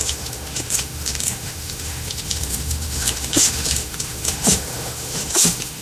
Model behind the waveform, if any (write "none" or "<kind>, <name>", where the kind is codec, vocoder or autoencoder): autoencoder, DAC-VAE